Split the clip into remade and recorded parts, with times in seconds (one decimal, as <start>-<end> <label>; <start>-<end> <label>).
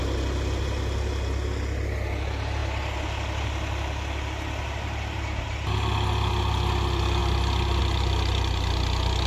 0.0-9.3 recorded